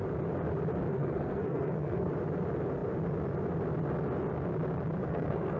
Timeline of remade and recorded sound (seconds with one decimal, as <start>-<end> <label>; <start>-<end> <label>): 0.0-0.9 recorded; 0.9-2.1 remade; 2.1-5.0 recorded; 5.0-5.6 remade